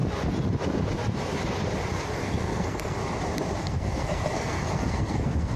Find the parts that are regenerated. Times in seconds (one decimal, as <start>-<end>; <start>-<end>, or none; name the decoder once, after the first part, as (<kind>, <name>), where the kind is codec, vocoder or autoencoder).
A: 2.2-3.0 (codec, SNAC); 3.6-5.6